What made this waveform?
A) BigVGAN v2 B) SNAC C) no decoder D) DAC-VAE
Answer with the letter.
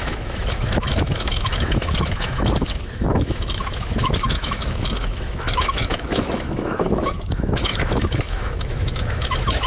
D